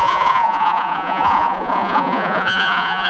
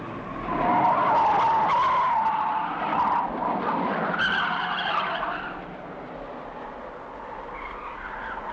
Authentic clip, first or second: second